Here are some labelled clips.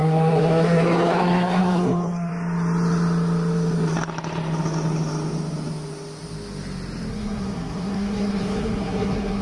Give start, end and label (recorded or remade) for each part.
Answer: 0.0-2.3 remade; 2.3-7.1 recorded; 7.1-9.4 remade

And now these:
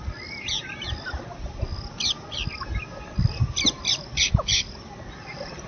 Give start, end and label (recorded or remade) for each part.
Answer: 0.0-0.6 remade; 0.6-4.0 recorded; 4.0-5.7 remade

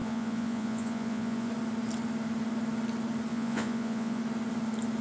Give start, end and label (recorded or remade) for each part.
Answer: 0.0-1.5 remade; 1.5-3.3 recorded; 3.3-4.2 remade; 4.2-5.0 recorded

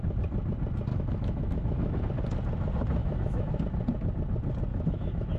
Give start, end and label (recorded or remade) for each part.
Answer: 0.0-0.9 recorded; 0.9-2.0 remade; 2.0-3.0 recorded; 3.0-3.6 remade; 3.6-4.7 recorded; 4.7-5.4 remade

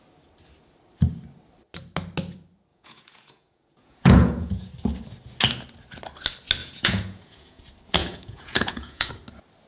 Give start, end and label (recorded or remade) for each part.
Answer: 0.0-2.7 recorded; 2.7-4.7 remade; 4.7-6.6 recorded; 6.6-7.6 remade; 7.6-8.0 recorded; 8.0-9.1 remade; 9.1-9.7 recorded

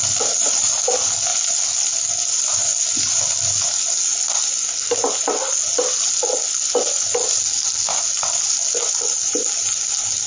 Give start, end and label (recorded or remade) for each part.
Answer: 0.0-10.3 recorded

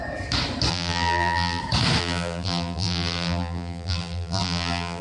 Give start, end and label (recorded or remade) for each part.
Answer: 0.0-0.7 recorded; 0.7-1.6 remade; 1.6-2.0 recorded; 2.0-5.0 remade